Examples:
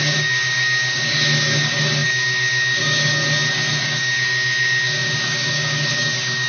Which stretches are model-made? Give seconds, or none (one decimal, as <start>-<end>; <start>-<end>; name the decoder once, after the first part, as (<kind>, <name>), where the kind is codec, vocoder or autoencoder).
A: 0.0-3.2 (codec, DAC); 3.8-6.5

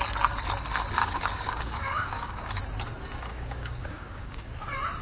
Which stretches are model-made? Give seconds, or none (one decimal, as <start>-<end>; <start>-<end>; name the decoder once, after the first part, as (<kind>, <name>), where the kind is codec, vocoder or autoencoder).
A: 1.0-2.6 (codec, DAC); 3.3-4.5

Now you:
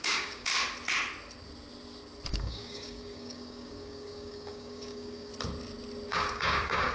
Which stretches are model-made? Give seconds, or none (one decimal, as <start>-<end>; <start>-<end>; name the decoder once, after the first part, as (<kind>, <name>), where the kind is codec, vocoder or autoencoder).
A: 0.0-0.5 (codec, DAC); 2.3-5.3; 6.1-6.9